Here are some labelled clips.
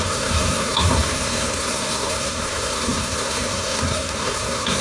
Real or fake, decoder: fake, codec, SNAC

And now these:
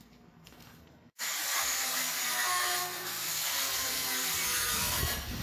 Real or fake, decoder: fake, codec, SNAC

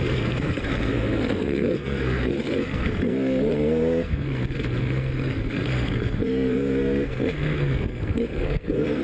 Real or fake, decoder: fake, codec, SNAC